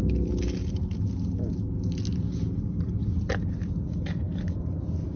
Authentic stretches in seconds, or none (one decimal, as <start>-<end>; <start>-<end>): 0.0-5.2